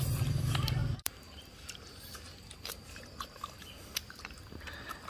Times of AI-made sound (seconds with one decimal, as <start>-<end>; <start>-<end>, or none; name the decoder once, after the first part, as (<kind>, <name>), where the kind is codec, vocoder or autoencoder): 0.8-2.7 (vocoder, BigVGAN v2)

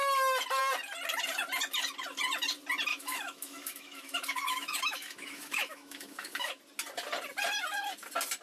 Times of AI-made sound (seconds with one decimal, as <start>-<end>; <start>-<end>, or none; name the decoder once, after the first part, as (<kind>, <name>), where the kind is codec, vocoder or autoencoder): 2.9-6.6 (autoencoder, DAC-VAE)